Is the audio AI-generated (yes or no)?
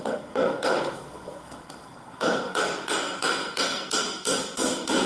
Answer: yes